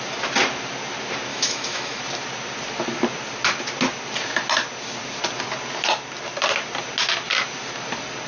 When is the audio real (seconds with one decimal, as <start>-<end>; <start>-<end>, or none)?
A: 0.0-1.3; 2.0-8.3